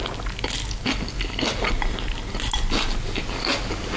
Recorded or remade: recorded